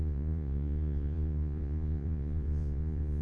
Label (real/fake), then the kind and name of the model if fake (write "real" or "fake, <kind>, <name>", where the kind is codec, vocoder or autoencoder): fake, vocoder, Vocos